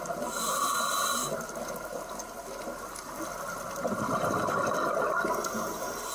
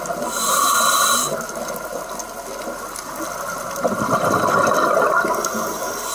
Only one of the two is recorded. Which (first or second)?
second